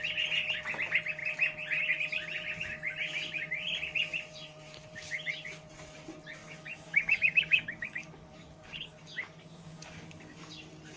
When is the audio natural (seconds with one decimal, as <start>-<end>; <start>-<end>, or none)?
0.0-6.4; 10.5-11.0